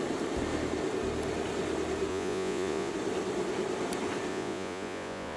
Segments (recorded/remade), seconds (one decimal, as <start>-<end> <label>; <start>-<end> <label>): 0.0-2.1 recorded; 2.1-2.9 remade; 2.9-4.3 recorded; 4.3-5.4 remade